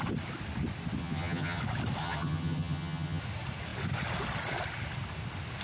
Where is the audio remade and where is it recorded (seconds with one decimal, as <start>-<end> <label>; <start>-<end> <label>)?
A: 0.0-1.0 recorded; 1.0-1.6 remade; 1.6-2.0 recorded; 2.0-3.2 remade; 3.2-5.6 recorded